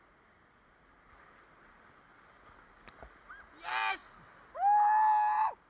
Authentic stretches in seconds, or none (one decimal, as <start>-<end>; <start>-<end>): 0.0-5.7